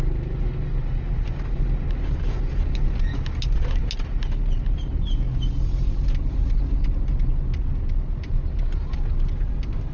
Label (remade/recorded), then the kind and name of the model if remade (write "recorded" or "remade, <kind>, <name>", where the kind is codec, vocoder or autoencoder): recorded